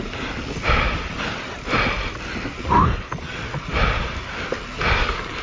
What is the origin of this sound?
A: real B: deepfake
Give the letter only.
A